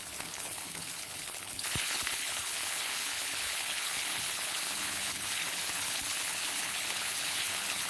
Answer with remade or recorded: remade